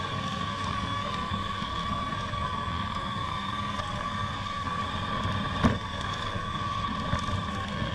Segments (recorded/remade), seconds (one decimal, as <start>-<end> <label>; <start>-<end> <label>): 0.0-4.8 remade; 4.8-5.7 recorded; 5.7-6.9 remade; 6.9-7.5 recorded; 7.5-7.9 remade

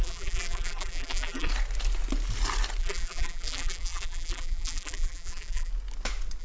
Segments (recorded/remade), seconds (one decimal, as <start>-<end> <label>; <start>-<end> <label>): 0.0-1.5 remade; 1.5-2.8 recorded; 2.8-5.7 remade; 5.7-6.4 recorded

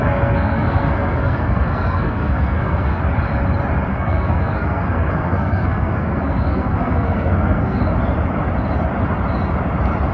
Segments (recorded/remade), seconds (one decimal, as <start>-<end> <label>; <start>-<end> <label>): 0.0-3.0 remade; 3.0-3.9 recorded; 3.9-7.8 remade; 7.8-10.1 recorded

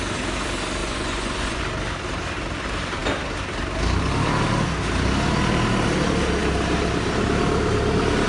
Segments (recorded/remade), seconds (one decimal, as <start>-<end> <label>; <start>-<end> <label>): 0.0-0.8 recorded; 0.8-1.6 remade; 1.6-8.3 recorded

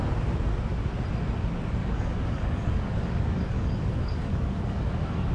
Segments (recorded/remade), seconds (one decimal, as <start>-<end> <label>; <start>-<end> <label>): 0.0-1.8 recorded; 1.8-5.3 remade